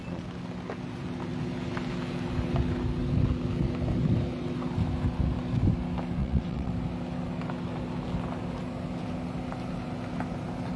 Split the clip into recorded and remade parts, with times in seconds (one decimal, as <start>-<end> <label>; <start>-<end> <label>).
0.0-6.2 recorded; 6.2-6.7 remade; 6.7-10.8 recorded